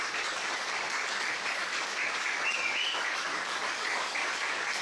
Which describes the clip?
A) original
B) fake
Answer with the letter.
B